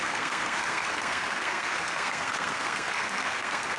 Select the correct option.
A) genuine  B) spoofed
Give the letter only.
B